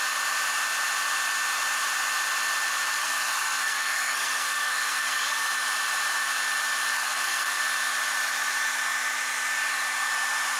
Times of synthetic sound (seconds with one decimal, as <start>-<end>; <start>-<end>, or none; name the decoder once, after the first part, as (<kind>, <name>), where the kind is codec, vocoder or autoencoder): 3.0-5.5 (codec, SNAC); 6.9-7.6